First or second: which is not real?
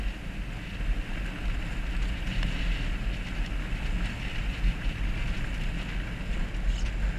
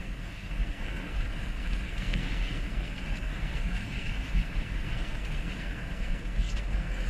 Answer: second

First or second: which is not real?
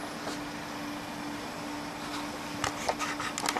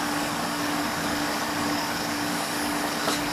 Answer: second